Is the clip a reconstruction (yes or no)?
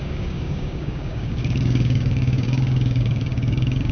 yes